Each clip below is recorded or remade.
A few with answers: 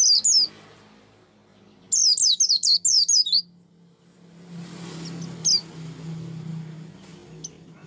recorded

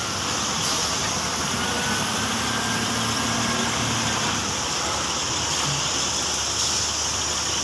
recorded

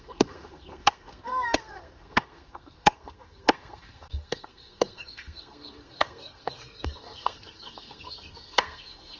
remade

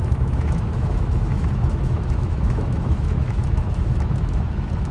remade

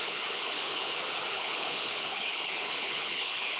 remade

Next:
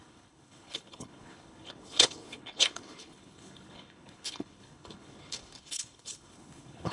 remade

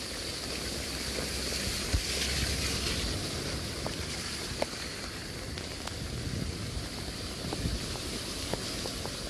recorded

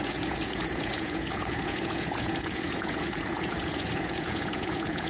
remade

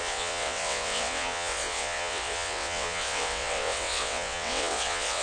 remade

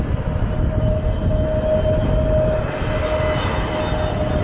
recorded